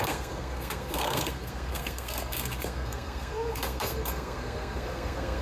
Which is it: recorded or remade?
remade